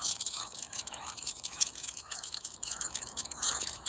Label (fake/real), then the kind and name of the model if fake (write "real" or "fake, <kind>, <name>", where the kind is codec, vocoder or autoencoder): fake, autoencoder, DAC-VAE